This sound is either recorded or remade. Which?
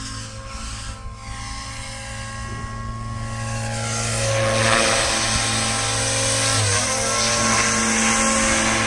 recorded